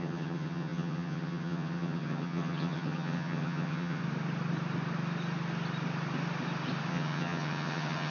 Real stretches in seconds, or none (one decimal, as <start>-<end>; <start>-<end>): 4.0-6.9